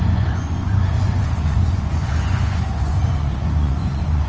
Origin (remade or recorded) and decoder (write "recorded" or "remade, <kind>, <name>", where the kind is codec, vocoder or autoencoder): remade, vocoder, Vocos